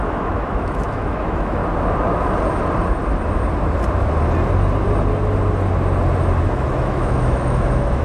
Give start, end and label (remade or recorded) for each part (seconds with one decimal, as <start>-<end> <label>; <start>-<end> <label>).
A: 0.0-1.6 remade; 1.6-6.4 recorded; 6.4-8.0 remade